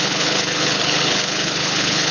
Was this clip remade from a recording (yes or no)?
yes